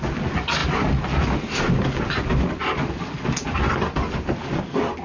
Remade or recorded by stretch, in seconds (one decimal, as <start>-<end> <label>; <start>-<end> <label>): 0.0-5.0 recorded